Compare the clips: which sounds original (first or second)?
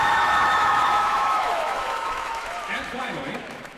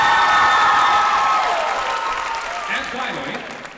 second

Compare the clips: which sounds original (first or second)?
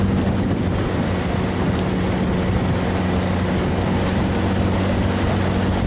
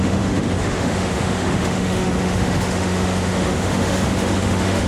first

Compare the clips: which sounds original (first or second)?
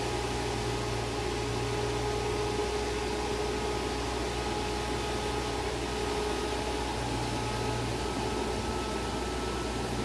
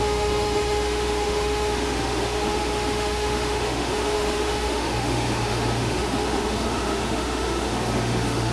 first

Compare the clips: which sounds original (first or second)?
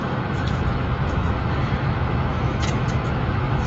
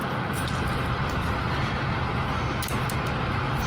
second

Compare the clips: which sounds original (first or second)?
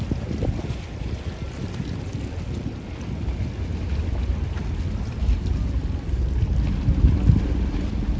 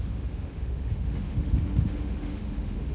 first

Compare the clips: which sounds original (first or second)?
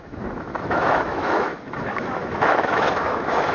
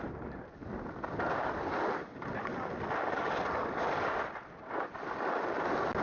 second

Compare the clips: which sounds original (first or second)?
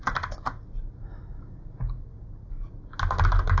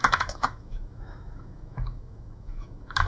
first